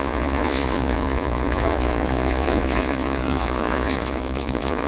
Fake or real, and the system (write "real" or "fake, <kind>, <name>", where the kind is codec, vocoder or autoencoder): fake, vocoder, Vocos